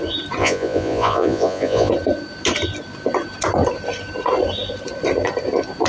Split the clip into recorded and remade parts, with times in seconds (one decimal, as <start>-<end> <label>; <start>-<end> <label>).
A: 0.0-0.4 recorded; 0.4-1.9 remade; 1.9-5.9 recorded